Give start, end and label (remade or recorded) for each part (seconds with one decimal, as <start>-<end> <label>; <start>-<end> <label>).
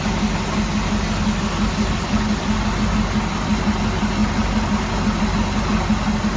0.0-6.4 recorded